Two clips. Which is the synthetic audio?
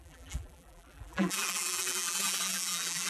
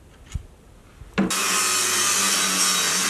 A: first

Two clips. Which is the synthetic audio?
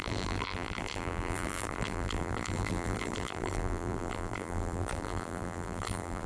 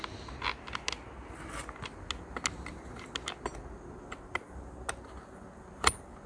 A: first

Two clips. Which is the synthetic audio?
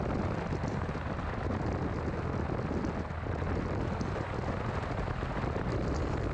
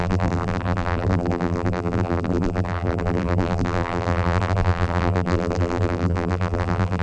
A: second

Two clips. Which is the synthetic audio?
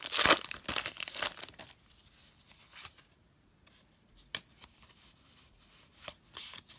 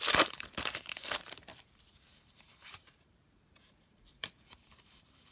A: second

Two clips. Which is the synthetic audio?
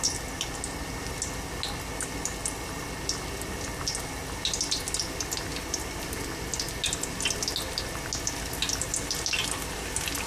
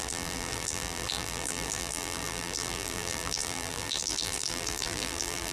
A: second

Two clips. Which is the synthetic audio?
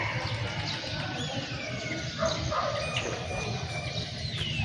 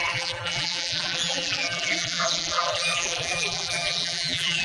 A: second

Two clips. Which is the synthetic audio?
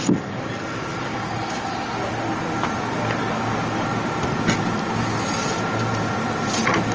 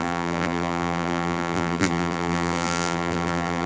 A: second